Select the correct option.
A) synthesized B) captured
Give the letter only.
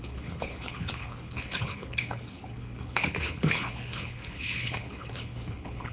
A